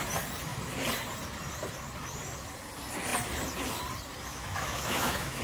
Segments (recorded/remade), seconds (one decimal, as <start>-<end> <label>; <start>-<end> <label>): 0.0-4.3 recorded; 4.3-5.4 remade